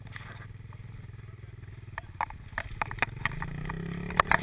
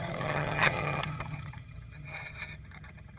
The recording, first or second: first